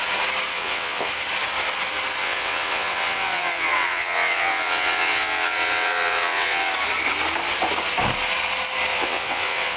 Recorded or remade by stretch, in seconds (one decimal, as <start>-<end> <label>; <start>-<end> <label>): 0.0-0.5 recorded; 0.5-1.1 remade; 1.1-2.2 recorded; 2.2-6.7 remade; 6.7-8.9 recorded; 8.9-9.8 remade